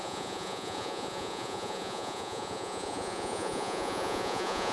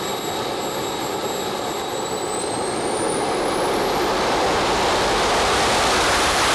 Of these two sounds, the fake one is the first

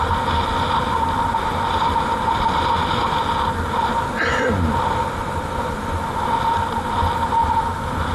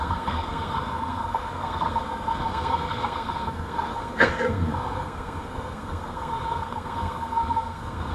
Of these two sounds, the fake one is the second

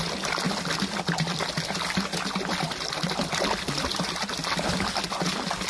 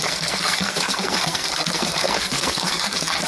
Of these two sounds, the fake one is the second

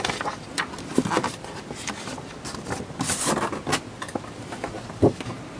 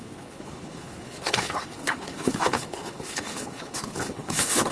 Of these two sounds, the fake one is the second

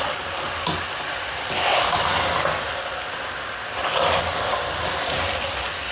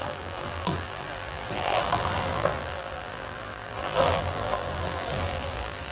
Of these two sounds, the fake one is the second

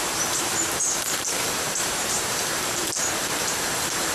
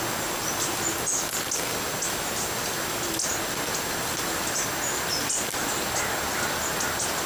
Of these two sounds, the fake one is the first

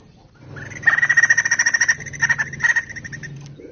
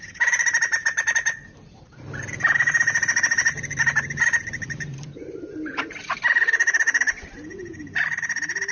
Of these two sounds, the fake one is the second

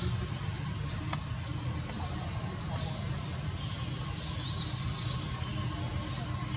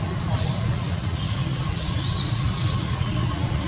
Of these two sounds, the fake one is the second